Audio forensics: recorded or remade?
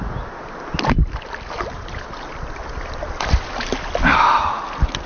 recorded